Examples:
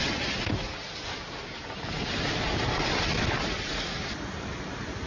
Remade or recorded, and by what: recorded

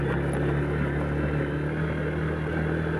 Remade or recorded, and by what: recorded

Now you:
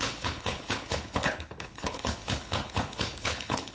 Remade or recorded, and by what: remade, codec, HILCodec